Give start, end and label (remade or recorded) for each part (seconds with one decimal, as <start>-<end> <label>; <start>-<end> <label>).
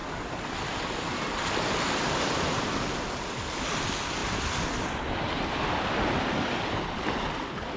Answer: 0.0-7.8 recorded